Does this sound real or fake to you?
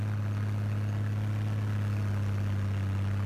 real